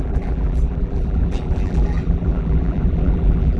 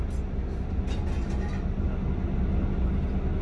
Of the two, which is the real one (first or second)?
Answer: second